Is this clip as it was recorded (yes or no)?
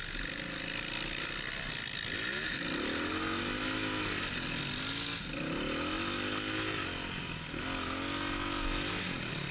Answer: yes